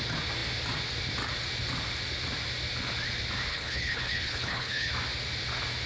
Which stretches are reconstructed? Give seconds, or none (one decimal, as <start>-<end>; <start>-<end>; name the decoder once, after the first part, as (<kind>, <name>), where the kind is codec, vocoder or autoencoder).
3.5-4.9 (codec, HILCodec)